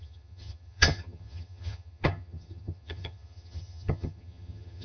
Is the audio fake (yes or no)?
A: yes